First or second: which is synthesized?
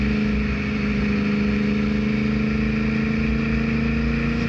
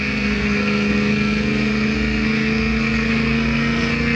second